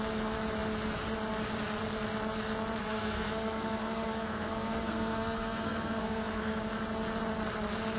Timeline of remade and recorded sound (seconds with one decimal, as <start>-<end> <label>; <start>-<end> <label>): 0.0-2.8 recorded; 2.8-6.6 remade; 6.6-8.0 recorded